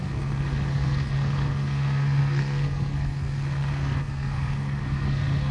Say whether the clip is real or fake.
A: fake